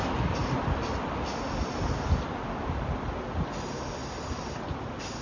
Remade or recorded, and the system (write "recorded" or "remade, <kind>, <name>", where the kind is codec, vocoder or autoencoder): recorded